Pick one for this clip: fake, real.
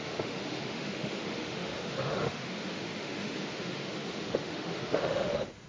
fake